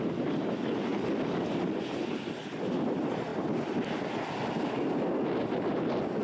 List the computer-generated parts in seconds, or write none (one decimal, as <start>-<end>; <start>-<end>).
none